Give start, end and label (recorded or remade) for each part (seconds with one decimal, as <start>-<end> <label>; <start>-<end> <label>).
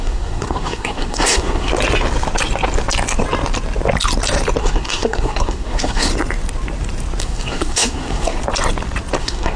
0.0-1.7 remade; 1.7-4.6 recorded; 4.6-6.1 remade; 6.1-7.2 recorded; 7.2-8.4 remade; 8.4-9.2 recorded; 9.2-9.6 remade